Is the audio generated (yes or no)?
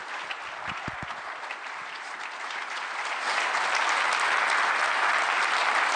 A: no